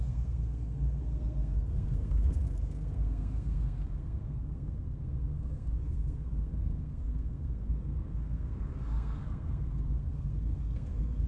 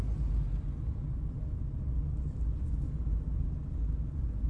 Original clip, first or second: second